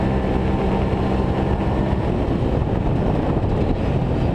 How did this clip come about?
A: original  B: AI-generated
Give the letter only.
A